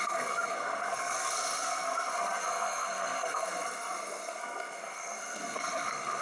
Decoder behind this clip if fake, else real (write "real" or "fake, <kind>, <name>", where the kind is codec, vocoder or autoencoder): fake, codec, SNAC